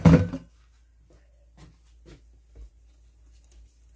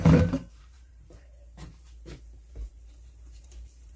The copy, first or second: second